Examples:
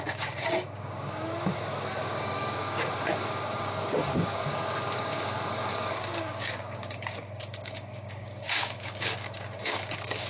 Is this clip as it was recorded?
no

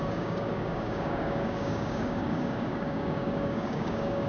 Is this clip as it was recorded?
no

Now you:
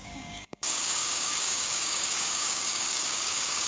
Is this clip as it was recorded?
no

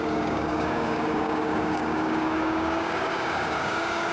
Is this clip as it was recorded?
no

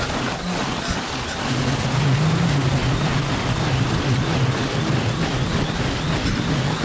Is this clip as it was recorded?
yes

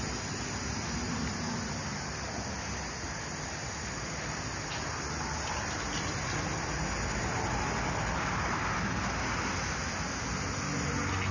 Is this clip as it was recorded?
yes